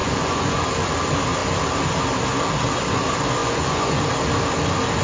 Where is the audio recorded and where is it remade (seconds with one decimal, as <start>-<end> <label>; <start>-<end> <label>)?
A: 0.0-0.6 remade; 0.6-3.4 recorded; 3.4-4.0 remade; 4.0-5.0 recorded